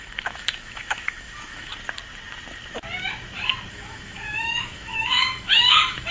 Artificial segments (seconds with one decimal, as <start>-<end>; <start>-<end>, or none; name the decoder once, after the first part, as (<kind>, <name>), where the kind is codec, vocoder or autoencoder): 0.0-1.7 (autoencoder, DAC-VAE); 3.7-6.1